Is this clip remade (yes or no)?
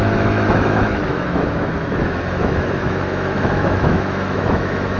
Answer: yes